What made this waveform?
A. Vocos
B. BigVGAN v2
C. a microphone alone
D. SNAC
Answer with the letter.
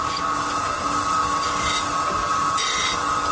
C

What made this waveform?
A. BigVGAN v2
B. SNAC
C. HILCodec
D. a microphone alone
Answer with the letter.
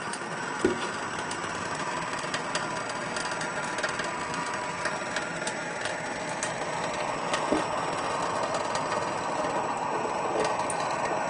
D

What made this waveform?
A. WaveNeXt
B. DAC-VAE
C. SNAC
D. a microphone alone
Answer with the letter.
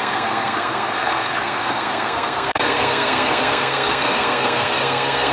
C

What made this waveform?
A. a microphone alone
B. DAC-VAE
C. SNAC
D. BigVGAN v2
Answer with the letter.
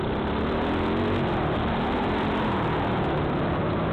A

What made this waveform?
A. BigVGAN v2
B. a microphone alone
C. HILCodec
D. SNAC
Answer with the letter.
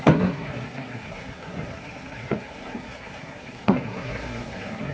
D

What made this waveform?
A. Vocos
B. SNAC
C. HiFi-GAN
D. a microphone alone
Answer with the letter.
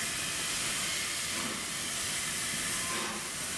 D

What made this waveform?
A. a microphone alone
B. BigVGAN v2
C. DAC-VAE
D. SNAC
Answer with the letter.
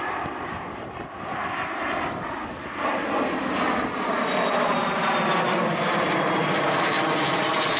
A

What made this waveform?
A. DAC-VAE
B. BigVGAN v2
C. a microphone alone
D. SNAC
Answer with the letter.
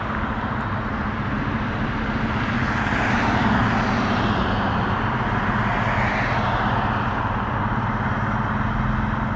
C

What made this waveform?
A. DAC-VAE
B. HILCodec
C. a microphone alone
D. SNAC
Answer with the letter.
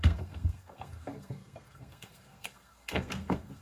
D